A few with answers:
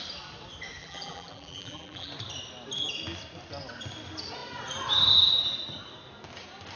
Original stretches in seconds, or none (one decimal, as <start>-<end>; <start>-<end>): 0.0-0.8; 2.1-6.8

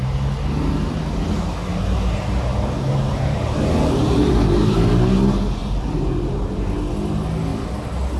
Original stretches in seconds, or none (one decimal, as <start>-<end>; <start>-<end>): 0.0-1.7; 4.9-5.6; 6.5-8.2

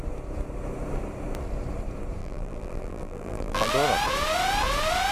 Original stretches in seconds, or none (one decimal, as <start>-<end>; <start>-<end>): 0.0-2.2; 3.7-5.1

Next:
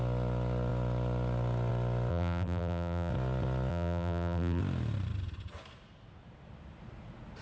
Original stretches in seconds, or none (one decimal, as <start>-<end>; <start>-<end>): 0.0-2.1; 3.1-3.7; 4.6-7.4

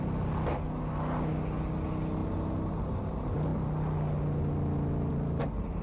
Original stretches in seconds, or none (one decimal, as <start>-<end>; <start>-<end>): 0.0-5.8

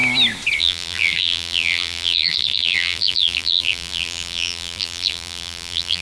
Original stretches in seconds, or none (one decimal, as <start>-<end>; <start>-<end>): 0.0-0.6